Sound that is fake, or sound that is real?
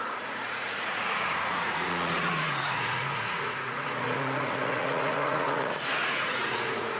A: fake